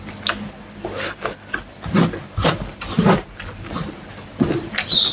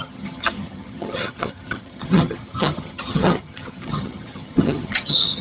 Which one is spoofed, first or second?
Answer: second